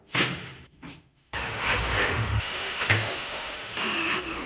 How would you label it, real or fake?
fake